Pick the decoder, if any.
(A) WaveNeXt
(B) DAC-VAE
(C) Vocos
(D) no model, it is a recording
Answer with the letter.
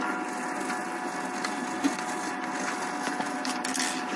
D